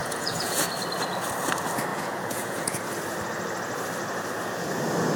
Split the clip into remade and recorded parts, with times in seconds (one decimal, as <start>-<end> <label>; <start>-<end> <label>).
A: 0.0-0.6 remade; 0.6-1.9 recorded; 1.9-2.8 remade; 2.8-5.2 recorded